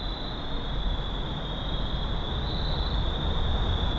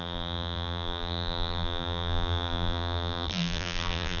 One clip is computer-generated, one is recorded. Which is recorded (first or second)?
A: first